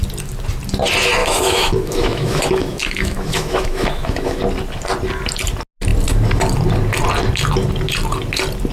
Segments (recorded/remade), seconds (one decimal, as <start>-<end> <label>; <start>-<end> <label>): 0.0-1.2 recorded; 1.2-4.4 remade; 4.4-8.7 recorded